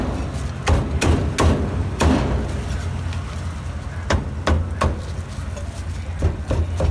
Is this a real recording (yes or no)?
yes